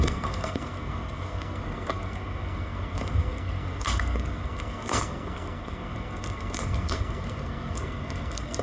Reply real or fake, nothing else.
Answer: fake